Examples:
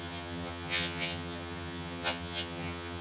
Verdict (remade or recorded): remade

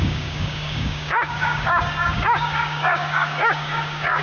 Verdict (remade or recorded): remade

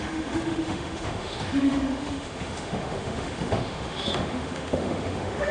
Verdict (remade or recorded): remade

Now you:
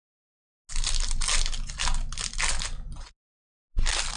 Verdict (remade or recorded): recorded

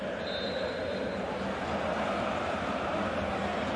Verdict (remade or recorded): recorded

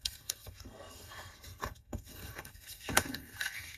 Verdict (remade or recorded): remade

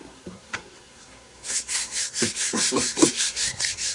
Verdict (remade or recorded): remade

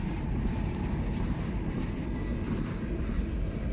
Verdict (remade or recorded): recorded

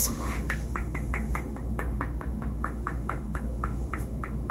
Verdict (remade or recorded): remade